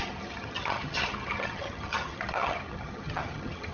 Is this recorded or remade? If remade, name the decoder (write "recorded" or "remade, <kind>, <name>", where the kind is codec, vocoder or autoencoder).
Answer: remade, vocoder, HiFi-GAN